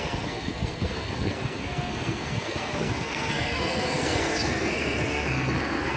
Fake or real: fake